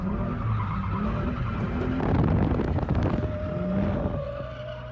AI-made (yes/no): no